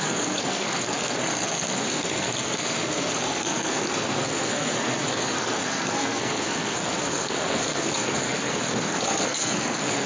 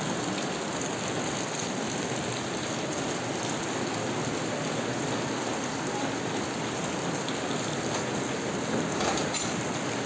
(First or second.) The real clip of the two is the second